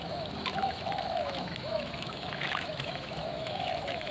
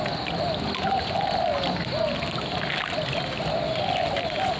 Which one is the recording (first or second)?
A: second